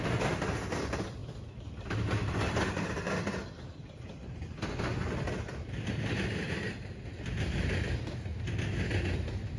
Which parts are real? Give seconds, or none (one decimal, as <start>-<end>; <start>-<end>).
0.0-9.6